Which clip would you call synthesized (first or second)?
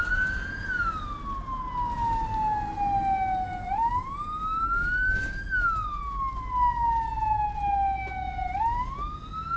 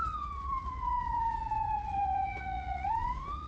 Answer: second